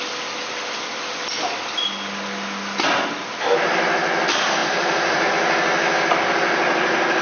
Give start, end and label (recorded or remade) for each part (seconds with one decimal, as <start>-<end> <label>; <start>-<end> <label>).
0.0-4.6 recorded; 4.6-5.3 remade; 5.3-7.2 recorded